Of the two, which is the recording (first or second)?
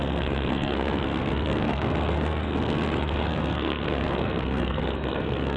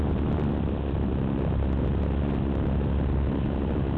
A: second